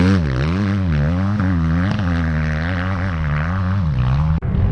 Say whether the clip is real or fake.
real